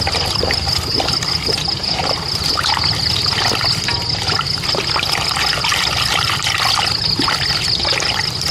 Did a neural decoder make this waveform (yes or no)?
no